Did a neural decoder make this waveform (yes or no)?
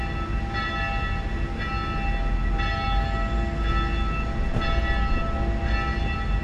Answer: no